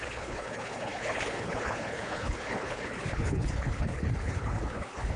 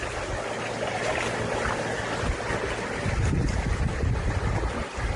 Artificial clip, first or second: first